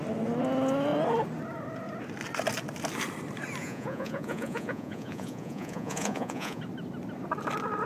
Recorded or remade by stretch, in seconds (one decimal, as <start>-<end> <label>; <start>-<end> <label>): 0.0-3.6 recorded; 3.6-6.6 remade; 6.6-7.9 recorded